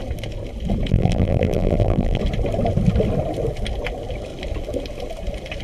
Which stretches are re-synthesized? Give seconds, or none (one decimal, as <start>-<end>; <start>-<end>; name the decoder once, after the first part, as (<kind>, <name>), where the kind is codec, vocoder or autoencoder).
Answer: 0.9-2.2 (vocoder, BigVGAN v2)

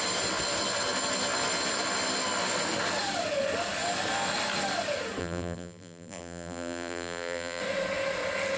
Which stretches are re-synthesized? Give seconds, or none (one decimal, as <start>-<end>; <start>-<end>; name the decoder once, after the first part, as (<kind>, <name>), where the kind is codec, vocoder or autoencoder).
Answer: 5.2-7.6 (vocoder, BigVGAN v2)